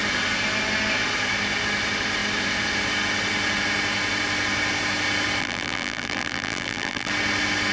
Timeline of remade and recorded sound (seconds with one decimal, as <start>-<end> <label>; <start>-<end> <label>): 0.0-5.4 recorded; 5.4-7.1 remade; 7.1-7.7 recorded